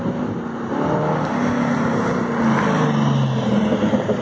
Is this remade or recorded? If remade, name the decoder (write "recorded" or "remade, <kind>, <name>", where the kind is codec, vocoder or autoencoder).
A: recorded